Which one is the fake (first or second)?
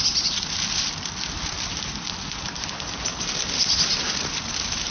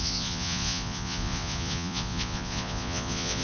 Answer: second